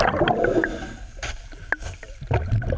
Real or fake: real